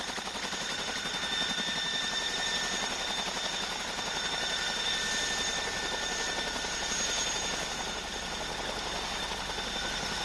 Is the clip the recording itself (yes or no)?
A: yes